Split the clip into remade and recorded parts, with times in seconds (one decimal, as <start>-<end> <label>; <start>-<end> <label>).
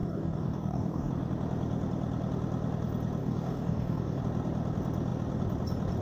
0.0-1.1 remade; 1.1-3.2 recorded; 3.2-4.2 remade; 4.2-6.0 recorded